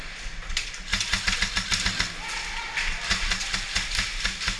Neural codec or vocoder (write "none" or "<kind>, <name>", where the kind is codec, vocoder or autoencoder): none